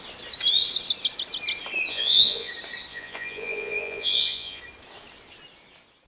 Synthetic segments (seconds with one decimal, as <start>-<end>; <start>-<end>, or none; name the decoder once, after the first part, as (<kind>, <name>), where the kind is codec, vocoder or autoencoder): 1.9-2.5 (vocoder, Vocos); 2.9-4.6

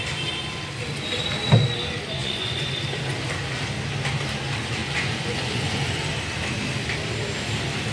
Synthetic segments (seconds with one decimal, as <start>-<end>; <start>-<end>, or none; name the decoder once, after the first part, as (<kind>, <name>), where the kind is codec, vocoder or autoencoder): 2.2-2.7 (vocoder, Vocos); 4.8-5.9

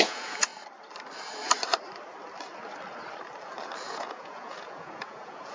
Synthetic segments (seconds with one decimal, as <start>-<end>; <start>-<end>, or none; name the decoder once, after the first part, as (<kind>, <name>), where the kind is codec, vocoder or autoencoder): 0.0-0.5 (vocoder, Vocos); 3.8-5.5

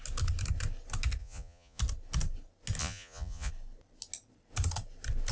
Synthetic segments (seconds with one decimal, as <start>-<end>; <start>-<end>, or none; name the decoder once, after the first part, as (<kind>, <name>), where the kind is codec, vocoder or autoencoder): 1.2-1.8 (vocoder, Vocos); 2.8-3.5

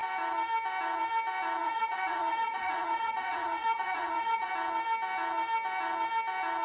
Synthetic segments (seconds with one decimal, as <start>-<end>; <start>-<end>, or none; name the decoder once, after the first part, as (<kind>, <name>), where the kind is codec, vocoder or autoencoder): 1.6-4.5 (vocoder, Vocos)

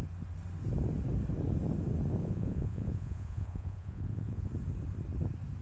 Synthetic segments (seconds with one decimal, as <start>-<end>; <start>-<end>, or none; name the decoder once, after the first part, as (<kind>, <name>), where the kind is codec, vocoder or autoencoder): 2.2-4.5 (vocoder, Vocos)

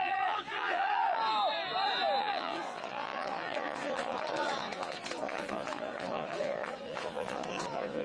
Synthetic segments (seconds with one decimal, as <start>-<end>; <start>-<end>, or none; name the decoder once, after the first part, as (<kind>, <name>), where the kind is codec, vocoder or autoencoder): 0.0-1.2 (vocoder, Vocos); 2.2-8.0

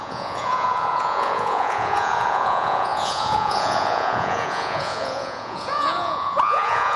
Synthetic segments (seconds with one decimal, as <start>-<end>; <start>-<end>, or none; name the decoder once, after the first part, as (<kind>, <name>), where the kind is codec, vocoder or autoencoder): 0.0-7.0 (vocoder, Vocos)